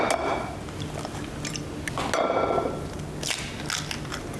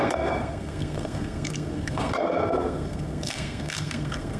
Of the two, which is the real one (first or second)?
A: first